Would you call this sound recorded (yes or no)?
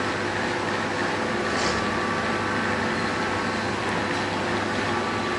yes